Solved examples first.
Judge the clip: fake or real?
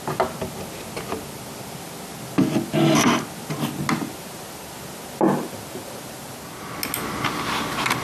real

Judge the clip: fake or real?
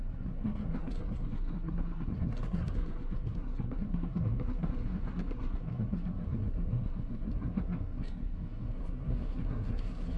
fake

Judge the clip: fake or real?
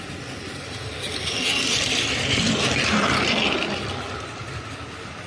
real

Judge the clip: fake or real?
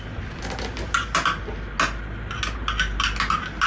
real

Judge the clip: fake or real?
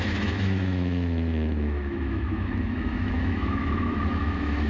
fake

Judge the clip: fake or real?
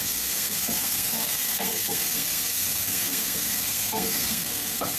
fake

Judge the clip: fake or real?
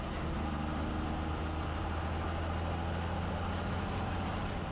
real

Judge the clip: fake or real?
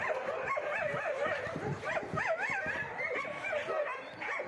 real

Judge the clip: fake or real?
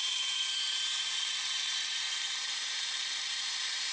fake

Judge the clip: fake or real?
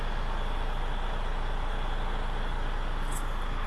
real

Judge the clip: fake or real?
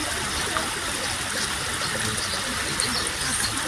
real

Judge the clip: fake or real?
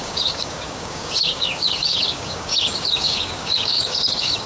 fake